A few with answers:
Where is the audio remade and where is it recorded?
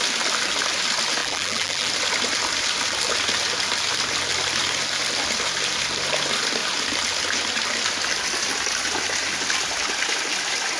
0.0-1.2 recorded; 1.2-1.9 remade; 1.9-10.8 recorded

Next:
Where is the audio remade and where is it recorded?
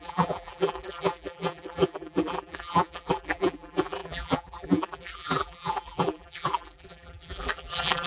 0.0-8.1 remade